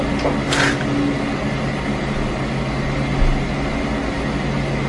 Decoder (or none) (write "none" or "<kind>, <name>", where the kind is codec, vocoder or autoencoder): none